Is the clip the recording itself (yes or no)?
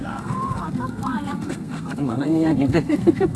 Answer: no